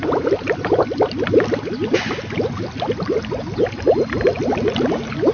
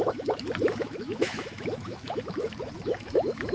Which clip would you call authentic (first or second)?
first